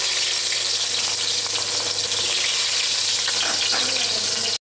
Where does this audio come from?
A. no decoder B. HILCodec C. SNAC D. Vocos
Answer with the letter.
A